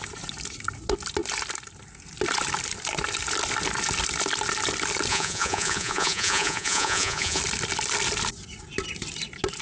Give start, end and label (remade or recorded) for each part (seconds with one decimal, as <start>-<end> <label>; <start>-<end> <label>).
0.0-5.1 recorded; 5.1-7.4 remade; 7.4-9.6 recorded